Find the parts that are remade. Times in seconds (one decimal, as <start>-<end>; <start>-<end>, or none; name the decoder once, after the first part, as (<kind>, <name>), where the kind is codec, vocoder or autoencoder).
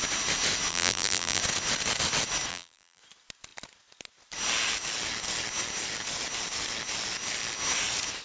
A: 0.7-1.4 (vocoder, BigVGAN v2); 2.5-3.0